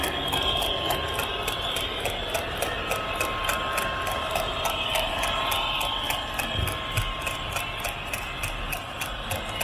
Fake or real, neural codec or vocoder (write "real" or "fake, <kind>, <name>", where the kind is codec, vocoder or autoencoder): real